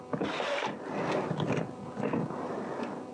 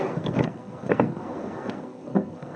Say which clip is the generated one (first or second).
second